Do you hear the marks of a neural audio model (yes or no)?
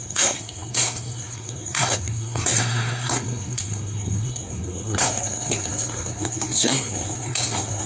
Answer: yes